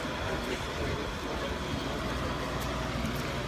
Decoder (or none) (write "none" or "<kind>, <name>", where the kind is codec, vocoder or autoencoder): none